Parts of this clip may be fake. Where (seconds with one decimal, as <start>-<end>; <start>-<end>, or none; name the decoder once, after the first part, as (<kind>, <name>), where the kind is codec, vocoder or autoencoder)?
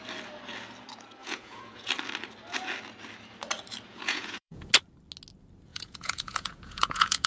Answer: 1.2-1.9 (vocoder, Vocos); 3.9-4.7; 5.7-7.3